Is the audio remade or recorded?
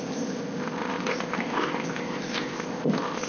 remade